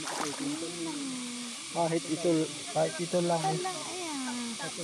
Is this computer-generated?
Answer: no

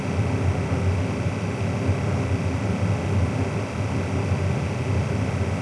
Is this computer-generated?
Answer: no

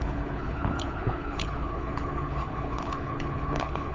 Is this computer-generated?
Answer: yes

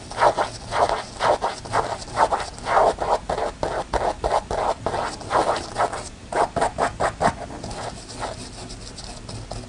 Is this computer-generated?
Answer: no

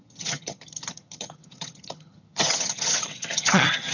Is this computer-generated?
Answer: yes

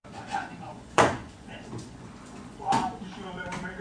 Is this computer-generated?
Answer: yes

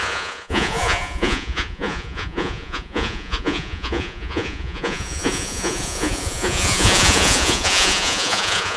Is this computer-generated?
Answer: yes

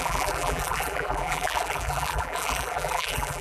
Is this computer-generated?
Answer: yes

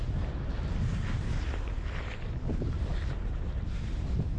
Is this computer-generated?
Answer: no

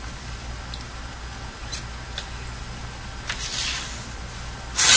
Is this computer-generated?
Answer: no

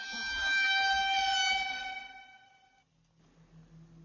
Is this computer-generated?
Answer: no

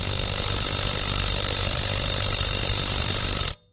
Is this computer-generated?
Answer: no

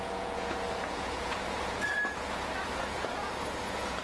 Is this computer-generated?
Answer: yes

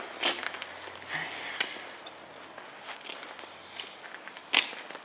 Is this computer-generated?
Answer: no